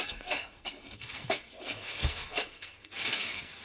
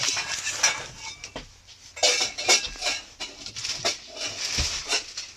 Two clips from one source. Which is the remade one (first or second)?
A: first